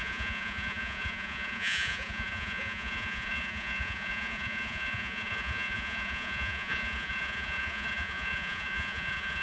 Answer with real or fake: fake